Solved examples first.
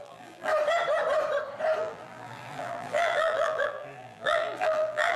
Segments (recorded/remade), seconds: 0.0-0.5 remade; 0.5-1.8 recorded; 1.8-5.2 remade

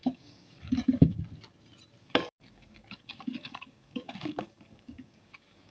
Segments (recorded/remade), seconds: 0.0-1.2 remade; 1.2-2.0 recorded; 2.0-5.7 remade

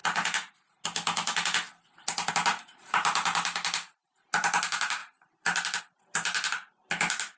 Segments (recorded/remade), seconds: 0.0-2.3 recorded; 2.3-7.4 remade

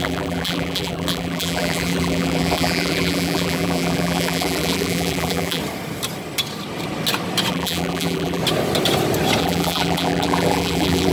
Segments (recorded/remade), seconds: 0.0-5.6 remade; 5.6-7.5 recorded; 7.5-8.4 remade; 8.4-9.4 recorded; 9.4-11.1 remade